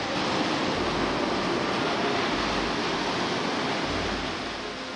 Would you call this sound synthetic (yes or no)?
no